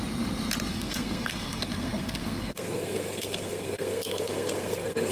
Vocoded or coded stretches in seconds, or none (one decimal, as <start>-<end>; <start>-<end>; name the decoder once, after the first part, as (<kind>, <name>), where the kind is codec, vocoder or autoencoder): 0.7-5.1 (codec, SNAC)